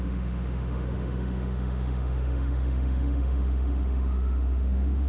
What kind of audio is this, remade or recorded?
remade